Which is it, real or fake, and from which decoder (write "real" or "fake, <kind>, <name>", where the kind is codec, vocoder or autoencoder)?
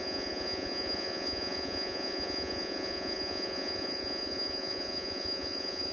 fake, vocoder, Vocos